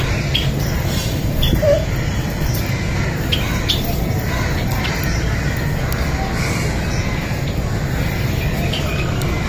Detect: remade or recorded recorded